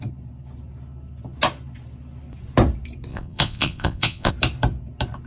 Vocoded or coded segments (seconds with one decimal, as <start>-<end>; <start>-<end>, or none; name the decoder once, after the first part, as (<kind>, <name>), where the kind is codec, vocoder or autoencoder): 3.1-4.3 (vocoder, Vocos)